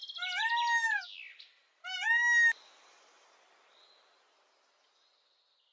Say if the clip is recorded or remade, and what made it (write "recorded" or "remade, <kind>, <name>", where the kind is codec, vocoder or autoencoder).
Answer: recorded